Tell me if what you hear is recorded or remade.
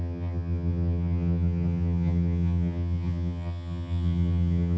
remade